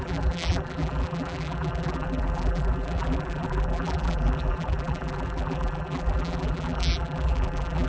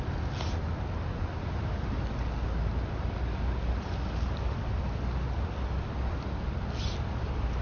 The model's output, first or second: first